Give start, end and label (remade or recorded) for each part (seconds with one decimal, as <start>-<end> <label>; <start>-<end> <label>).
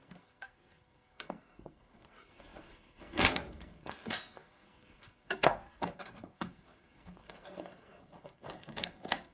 0.0-9.3 remade